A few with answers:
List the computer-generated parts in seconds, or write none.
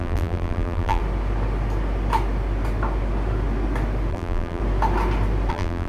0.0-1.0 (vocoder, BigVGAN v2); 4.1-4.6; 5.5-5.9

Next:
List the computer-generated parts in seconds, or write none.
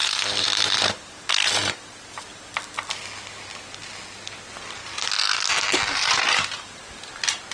0.0-1.2 (vocoder, BigVGAN v2); 1.6-2.4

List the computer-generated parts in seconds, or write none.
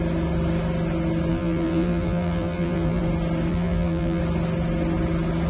1.3-3.0 (vocoder, BigVGAN v2); 3.5-4.2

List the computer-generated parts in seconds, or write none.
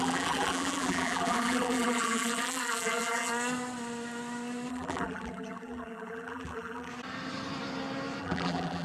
0.0-3.3 (vocoder, BigVGAN v2); 4.7-6.9; 8.2-8.8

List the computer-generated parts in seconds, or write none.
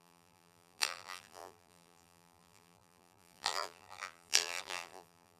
0.0-5.4 (vocoder, BigVGAN v2)